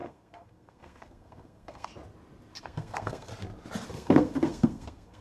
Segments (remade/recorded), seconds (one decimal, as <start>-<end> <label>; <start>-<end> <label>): 0.0-1.9 remade; 1.9-2.6 recorded; 2.6-3.3 remade; 3.3-3.9 recorded; 3.9-5.2 remade